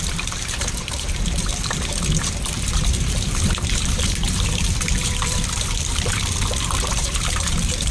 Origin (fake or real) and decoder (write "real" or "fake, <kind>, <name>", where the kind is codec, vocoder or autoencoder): fake, vocoder, BigVGAN v2